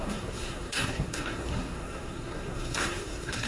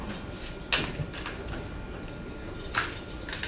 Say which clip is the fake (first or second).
first